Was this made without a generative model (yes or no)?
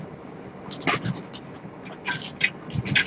yes